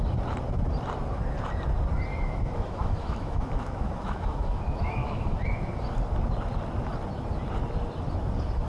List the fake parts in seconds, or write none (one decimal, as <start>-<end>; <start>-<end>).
2.1-5.7